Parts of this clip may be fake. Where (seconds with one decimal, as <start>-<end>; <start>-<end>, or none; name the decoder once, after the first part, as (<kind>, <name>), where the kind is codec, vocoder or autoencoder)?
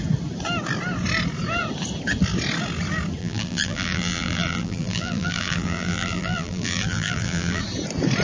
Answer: 3.2-7.6 (vocoder, BigVGAN v2)